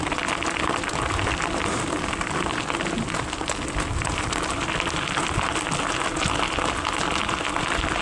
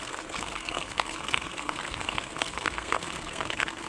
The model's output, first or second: second